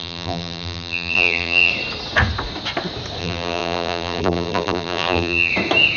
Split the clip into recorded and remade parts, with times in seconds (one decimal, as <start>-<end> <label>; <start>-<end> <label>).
0.0-1.7 remade; 1.7-3.2 recorded; 3.2-5.5 remade; 5.5-6.0 recorded